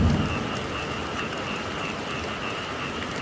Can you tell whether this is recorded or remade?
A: recorded